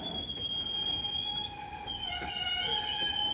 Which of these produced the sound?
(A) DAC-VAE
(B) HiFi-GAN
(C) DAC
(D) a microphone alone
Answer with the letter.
D